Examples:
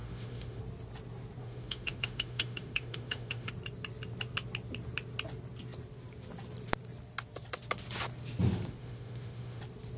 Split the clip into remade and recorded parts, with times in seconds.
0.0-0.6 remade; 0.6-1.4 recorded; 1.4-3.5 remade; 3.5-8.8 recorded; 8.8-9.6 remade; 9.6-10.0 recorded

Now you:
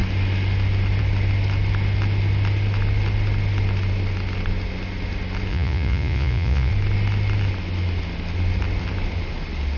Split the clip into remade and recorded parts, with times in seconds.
0.0-5.5 recorded; 5.5-6.7 remade; 6.7-9.8 recorded

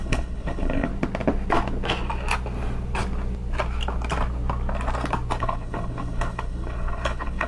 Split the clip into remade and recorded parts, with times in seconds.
0.0-0.9 remade; 0.9-5.4 recorded; 5.4-7.5 remade

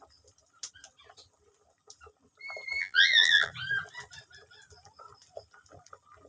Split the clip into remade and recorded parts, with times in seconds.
0.0-2.8 recorded; 2.8-3.5 remade; 3.5-6.3 recorded

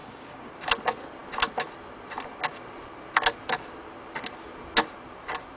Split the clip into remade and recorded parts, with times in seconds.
0.0-0.5 remade; 0.5-5.6 recorded

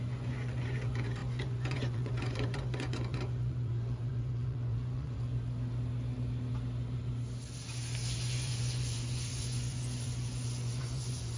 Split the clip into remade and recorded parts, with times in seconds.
0.0-5.3 remade; 5.3-8.3 recorded; 8.3-11.4 remade

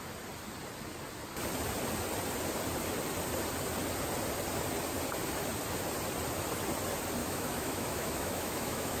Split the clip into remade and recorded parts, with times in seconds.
0.0-7.2 recorded; 7.2-9.0 remade

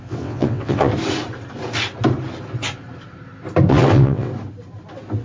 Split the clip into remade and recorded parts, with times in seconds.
0.0-0.9 remade; 0.9-3.7 recorded; 3.7-4.3 remade; 4.3-5.2 recorded